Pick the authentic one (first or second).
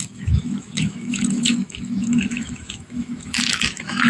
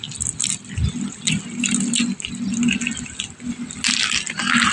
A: second